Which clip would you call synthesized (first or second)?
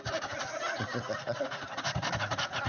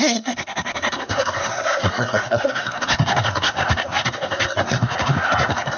second